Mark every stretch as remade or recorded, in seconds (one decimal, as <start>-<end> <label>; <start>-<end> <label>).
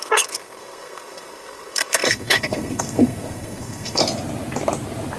0.0-4.0 remade; 4.0-5.2 recorded